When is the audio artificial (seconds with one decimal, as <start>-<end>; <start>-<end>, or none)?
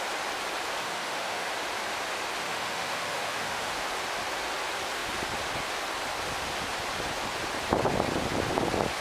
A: 0.8-1.5; 2.4-3.7